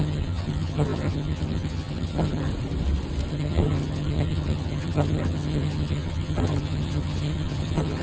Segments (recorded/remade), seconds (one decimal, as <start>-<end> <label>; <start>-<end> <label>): 0.0-2.5 remade; 2.5-3.3 recorded; 3.3-8.0 remade

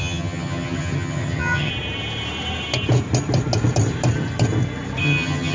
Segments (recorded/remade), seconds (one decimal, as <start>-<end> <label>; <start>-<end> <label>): 0.0-1.7 remade; 1.7-5.0 recorded; 5.0-5.5 remade